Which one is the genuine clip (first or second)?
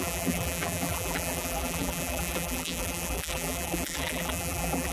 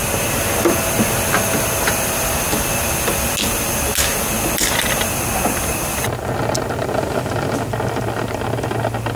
second